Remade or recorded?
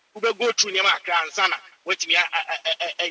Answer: recorded